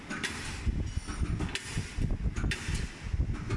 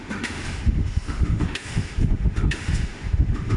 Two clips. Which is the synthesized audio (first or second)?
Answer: second